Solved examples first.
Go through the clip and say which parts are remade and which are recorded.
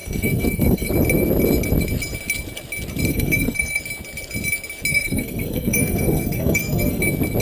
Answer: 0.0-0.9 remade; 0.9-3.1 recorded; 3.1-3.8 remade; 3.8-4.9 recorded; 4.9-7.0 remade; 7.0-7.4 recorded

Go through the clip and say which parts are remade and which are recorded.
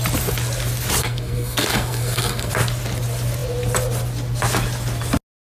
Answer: 0.0-1.0 recorded; 1.0-2.5 remade; 2.5-5.6 recorded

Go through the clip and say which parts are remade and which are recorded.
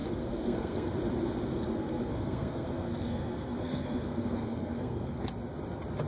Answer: 0.0-0.9 remade; 0.9-1.5 recorded; 1.5-5.2 remade; 5.2-6.1 recorded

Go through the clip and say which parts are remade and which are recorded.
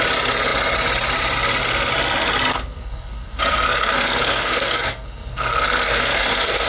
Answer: 0.0-2.5 recorded; 2.5-6.7 remade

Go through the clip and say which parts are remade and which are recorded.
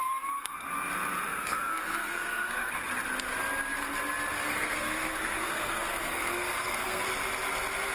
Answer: 0.0-0.7 remade; 0.7-1.3 recorded; 1.3-2.7 remade; 2.7-4.5 recorded; 4.5-7.0 remade; 7.0-7.9 recorded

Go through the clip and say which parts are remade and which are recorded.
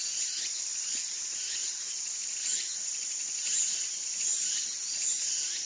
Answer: 0.0-5.6 recorded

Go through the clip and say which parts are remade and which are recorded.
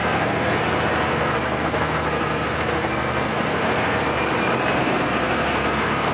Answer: 0.0-0.6 remade; 0.6-1.1 recorded; 1.1-4.0 remade; 4.0-4.8 recorded; 4.8-6.1 remade